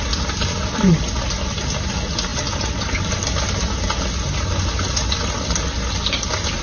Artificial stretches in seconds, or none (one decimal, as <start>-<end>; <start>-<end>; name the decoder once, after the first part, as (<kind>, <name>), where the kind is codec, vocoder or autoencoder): none